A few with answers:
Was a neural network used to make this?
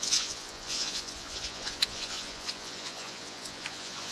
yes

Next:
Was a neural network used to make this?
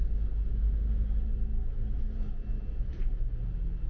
no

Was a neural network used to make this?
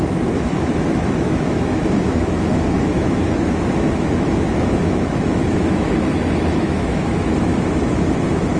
yes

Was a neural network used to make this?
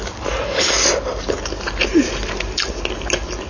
no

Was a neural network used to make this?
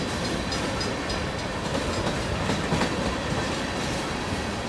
no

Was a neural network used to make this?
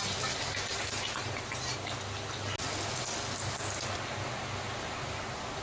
no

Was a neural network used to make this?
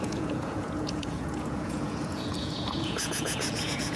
yes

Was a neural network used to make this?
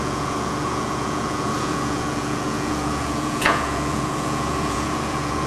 yes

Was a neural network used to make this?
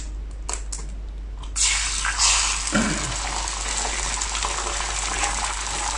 no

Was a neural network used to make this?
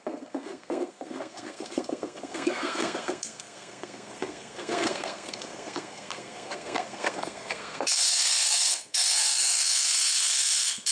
yes